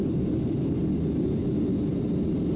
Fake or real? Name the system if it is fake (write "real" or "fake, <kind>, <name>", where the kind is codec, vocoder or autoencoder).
real